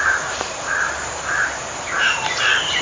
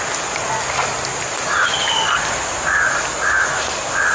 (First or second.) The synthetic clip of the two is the first